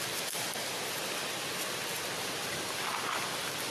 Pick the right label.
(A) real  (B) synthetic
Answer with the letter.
A